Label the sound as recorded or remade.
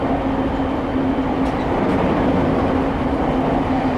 recorded